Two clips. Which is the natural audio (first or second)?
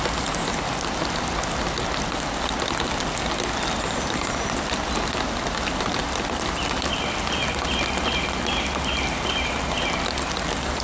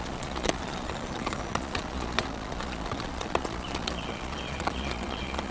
first